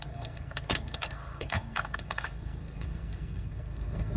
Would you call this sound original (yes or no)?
no